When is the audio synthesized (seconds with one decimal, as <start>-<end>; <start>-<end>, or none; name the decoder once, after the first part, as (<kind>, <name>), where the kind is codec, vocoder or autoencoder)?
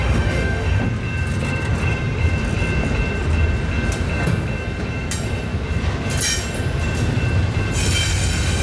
0.0-0.8 (autoencoder, DAC-VAE)